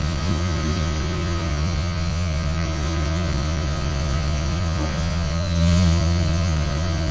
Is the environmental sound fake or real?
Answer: fake